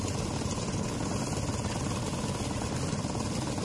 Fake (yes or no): no